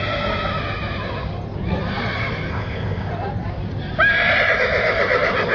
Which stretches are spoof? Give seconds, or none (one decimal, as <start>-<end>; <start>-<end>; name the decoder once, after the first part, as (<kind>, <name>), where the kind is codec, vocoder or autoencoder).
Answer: 2.5-3.1 (codec, ZipCodec)